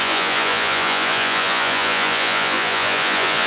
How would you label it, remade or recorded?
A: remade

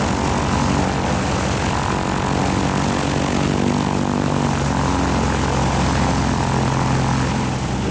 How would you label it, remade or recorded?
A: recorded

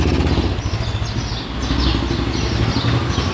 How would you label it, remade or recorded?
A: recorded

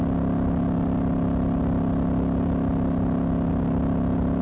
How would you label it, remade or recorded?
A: recorded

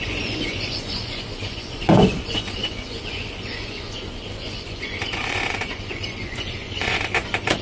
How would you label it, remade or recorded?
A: remade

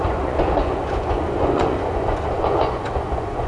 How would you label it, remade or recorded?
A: remade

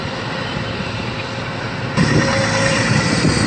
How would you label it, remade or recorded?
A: recorded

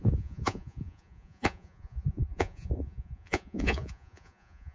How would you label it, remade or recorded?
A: remade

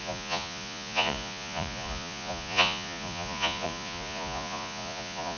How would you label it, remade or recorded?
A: remade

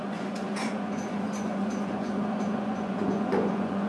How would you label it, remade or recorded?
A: remade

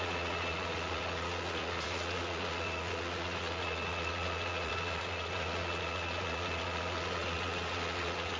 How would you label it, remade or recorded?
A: remade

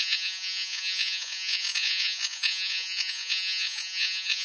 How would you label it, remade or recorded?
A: remade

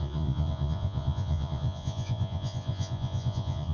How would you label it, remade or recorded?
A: remade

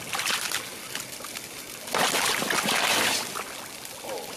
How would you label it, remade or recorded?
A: recorded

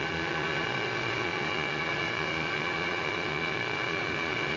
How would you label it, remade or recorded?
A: remade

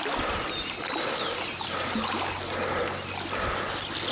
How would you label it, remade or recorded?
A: recorded